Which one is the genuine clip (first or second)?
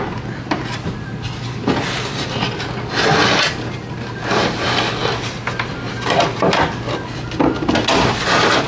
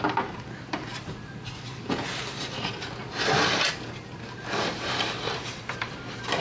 first